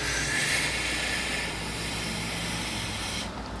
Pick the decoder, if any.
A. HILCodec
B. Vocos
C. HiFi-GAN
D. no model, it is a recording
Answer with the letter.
D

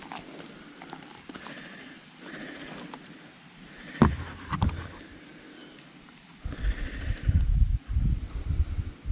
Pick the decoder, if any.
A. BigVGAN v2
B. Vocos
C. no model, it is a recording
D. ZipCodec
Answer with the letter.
C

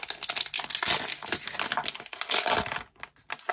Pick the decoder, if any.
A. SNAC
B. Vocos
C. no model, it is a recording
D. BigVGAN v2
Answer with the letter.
C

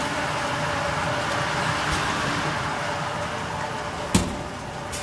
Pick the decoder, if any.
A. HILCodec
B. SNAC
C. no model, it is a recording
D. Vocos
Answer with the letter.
C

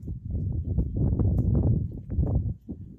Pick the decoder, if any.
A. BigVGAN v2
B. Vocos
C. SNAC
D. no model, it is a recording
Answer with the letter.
B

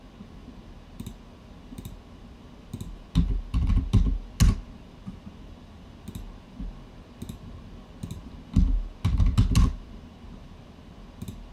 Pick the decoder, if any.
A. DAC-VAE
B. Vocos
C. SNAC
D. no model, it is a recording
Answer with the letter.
D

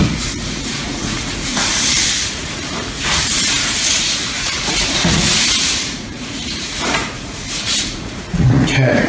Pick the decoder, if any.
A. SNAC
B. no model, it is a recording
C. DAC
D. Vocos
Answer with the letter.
D